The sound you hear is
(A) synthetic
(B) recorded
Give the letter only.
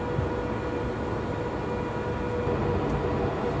B